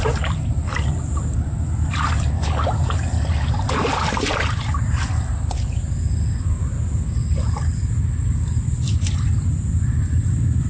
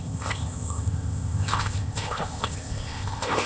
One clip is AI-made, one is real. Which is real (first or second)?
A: first